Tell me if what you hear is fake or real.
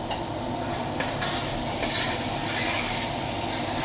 real